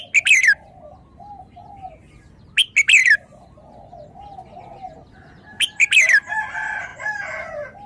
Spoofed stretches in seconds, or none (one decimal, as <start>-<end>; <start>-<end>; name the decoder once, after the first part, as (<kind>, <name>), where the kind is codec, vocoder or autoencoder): none